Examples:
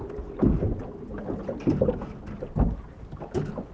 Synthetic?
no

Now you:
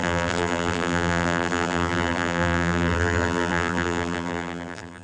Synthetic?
yes